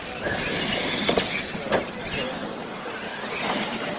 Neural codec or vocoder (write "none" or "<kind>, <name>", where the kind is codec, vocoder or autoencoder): none